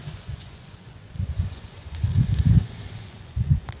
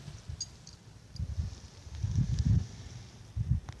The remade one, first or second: first